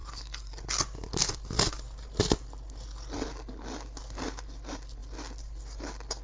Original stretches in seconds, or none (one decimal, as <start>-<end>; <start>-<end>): 0.0-6.2